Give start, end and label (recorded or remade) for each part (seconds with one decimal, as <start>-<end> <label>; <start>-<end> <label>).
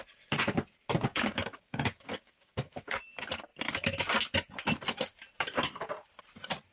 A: 0.0-1.1 recorded; 1.1-3.0 remade; 3.0-6.7 recorded